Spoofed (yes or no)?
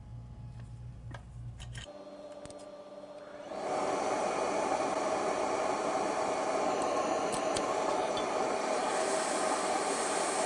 no